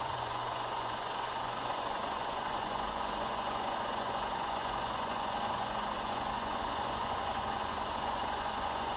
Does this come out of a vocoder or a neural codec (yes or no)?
yes